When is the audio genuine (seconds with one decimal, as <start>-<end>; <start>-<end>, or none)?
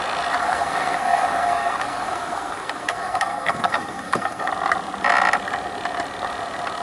0.0-0.4; 4.5-6.8